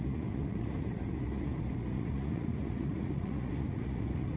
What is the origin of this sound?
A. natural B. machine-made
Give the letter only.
B